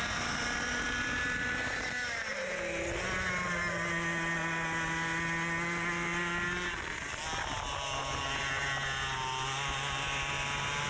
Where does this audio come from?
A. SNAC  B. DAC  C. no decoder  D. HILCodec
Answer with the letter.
C